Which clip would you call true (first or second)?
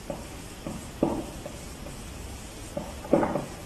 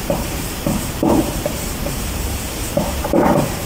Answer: first